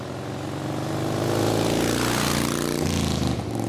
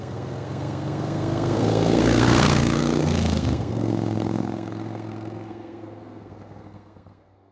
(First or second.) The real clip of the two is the first